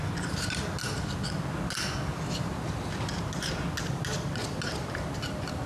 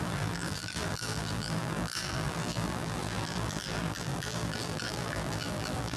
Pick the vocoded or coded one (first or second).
second